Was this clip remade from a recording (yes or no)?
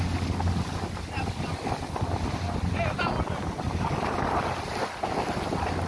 no